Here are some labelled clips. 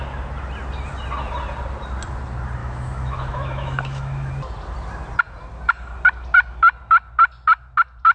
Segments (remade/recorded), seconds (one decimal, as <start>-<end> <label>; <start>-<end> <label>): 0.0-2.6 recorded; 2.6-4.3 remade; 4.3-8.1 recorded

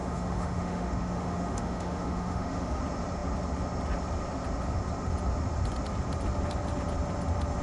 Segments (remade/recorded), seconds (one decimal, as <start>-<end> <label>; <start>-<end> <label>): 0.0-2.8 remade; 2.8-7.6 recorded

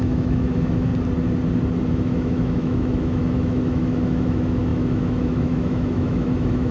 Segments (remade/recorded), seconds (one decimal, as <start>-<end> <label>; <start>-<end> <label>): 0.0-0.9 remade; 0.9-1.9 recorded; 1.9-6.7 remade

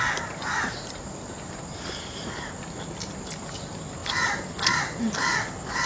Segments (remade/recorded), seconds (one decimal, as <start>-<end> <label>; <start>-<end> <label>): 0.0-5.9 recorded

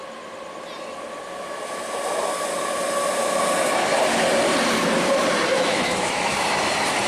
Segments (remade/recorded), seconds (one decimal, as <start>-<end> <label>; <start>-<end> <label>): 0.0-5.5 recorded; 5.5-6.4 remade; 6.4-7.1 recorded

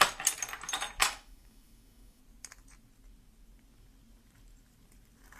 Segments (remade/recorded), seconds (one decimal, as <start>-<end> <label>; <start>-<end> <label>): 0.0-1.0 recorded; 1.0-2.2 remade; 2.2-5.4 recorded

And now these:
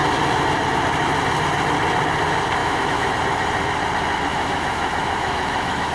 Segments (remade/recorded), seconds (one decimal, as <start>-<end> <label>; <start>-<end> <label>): 0.0-2.6 recorded; 2.6-3.1 remade; 3.1-4.3 recorded; 4.3-5.9 remade

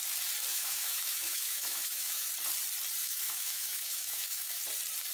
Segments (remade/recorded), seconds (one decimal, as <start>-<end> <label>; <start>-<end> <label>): 0.0-0.5 recorded; 0.5-2.3 remade; 2.3-3.0 recorded; 3.0-4.6 remade; 4.6-5.1 recorded